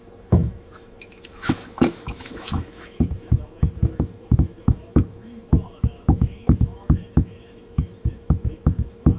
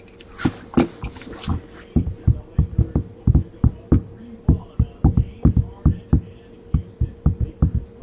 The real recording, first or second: second